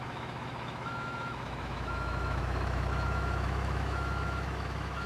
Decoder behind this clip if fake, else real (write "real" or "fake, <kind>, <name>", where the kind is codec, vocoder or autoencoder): fake, autoencoder, DAC-VAE